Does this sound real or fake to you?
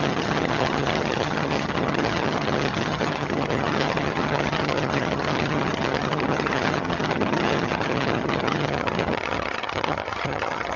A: fake